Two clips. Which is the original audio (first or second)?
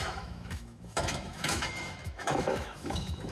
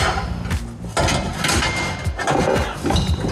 second